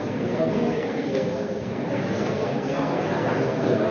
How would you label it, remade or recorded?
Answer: remade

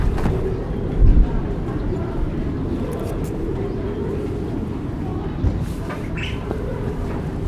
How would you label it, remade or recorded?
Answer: recorded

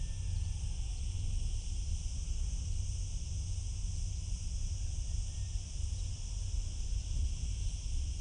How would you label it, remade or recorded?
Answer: recorded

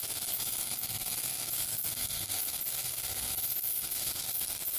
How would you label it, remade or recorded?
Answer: remade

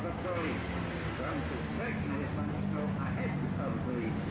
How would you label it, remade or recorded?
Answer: recorded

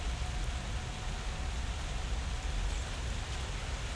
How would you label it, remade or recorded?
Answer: recorded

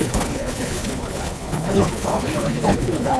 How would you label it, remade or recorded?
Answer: remade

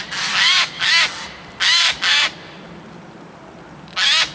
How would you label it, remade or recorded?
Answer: recorded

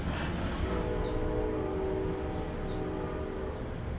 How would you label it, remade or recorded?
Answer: recorded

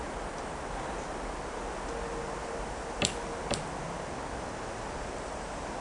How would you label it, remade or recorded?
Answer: recorded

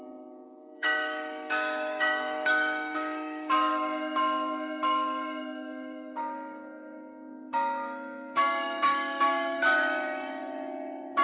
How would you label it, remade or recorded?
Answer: remade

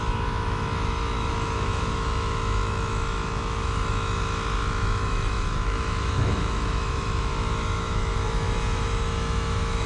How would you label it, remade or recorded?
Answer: remade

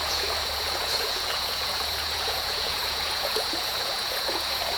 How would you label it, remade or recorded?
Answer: remade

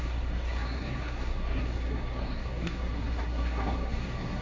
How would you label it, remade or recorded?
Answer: remade